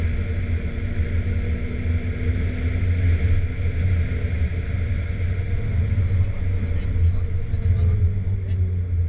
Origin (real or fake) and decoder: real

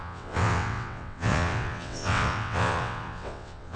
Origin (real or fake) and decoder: fake, vocoder, WaveNeXt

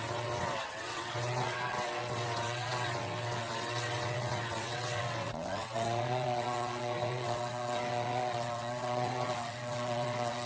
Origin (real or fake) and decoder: fake, vocoder, WaveNeXt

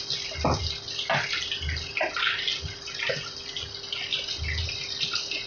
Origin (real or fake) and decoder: real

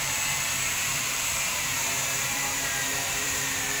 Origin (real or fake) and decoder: fake, vocoder, BigVGAN v2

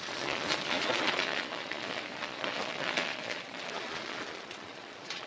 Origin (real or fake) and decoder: fake, vocoder, Vocos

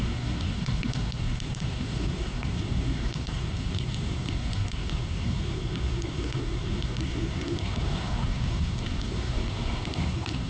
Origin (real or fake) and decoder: fake, codec, SNAC